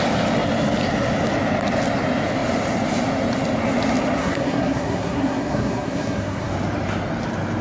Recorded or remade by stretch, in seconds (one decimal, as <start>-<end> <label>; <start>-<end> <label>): 0.0-4.2 recorded; 4.2-6.5 remade; 6.5-7.6 recorded